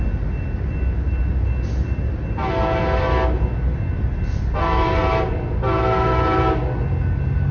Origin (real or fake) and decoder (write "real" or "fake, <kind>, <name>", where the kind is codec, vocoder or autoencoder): real